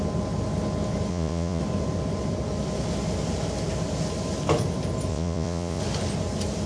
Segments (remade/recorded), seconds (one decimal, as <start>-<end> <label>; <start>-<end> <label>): 0.0-1.1 recorded; 1.1-1.6 remade; 1.6-5.1 recorded; 5.1-5.8 remade; 5.8-6.7 recorded